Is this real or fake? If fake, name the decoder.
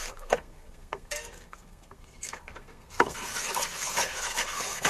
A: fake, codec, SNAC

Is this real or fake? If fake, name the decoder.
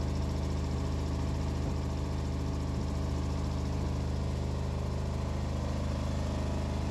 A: real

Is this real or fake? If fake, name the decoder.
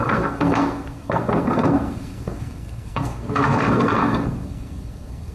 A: fake, codec, SNAC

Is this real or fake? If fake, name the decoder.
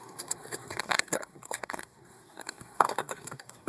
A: fake, codec, SNAC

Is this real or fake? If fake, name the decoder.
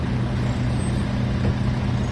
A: real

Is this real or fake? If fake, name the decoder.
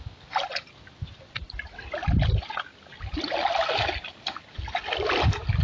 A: real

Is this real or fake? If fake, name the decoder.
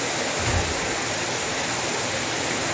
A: real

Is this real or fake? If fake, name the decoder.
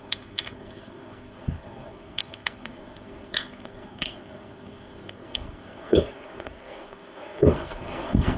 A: fake, codec, SNAC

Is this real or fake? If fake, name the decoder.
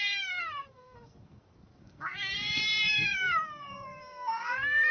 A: fake, codec, SNAC